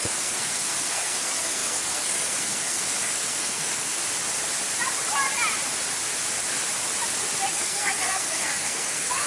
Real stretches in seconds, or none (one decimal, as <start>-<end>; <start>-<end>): 4.0-7.5